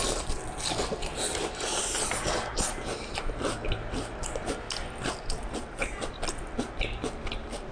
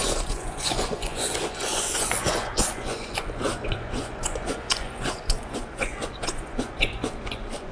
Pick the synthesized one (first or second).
second